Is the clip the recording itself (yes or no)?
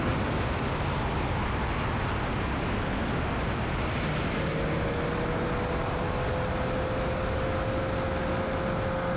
yes